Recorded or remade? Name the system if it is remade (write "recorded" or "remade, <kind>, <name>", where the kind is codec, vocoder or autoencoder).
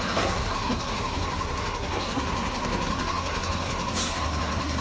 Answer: remade, codec, SNAC